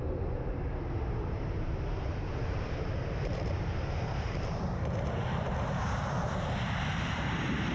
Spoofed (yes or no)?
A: yes